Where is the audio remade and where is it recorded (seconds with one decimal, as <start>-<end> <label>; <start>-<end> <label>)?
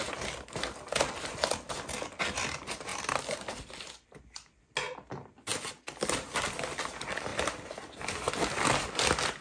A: 0.0-2.9 recorded; 2.9-4.6 remade; 4.6-9.4 recorded